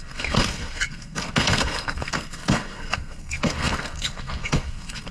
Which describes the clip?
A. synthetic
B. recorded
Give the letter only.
A